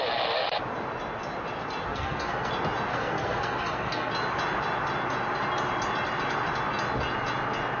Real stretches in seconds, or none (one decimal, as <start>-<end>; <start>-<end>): 0.0-1.9; 2.5-2.9; 4.1-7.8